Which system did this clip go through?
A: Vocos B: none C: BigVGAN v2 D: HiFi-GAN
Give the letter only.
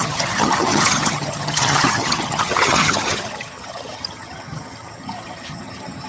D